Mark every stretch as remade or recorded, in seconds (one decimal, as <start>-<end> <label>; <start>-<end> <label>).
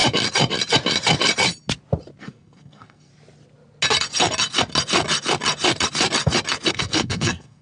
0.0-2.2 recorded; 2.2-3.1 remade; 3.1-6.7 recorded; 6.7-7.6 remade